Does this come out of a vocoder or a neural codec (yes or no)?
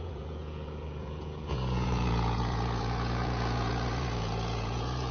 yes